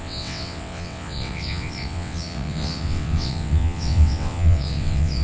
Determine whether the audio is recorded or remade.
remade